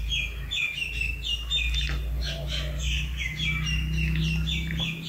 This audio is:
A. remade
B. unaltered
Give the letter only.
B